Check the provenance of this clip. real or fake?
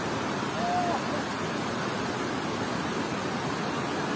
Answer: real